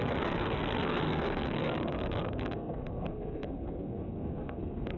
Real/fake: fake